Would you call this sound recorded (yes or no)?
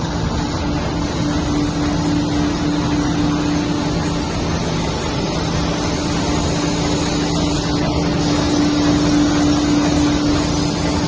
yes